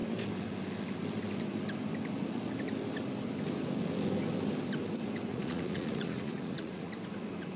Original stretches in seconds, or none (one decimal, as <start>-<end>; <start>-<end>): 0.0-5.3; 6.9-7.6